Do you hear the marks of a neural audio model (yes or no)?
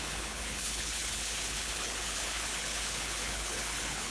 yes